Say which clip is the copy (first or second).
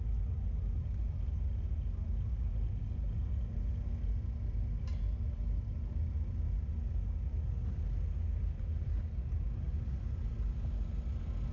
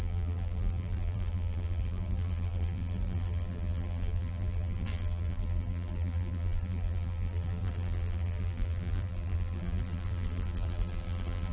second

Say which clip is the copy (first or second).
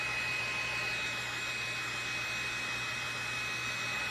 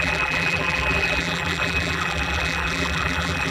second